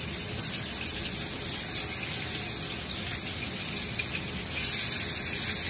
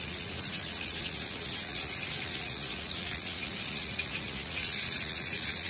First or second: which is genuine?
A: first